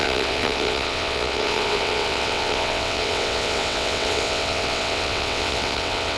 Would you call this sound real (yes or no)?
no